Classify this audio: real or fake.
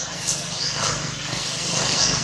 fake